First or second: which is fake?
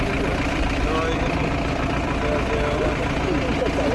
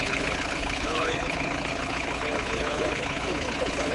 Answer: second